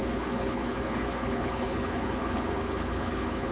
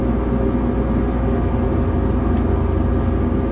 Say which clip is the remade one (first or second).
first